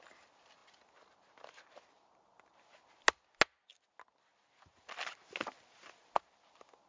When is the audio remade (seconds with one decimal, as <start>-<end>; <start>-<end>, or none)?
none